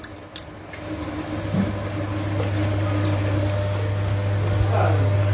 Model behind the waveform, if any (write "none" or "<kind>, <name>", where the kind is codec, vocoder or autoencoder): none